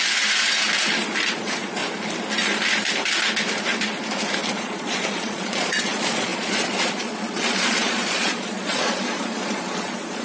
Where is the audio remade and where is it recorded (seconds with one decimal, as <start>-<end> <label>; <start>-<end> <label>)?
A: 0.0-1.4 recorded; 1.4-1.8 remade; 1.8-4.5 recorded; 4.5-10.2 remade